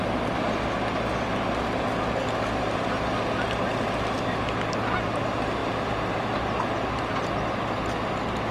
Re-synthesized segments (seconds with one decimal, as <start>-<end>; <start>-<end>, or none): none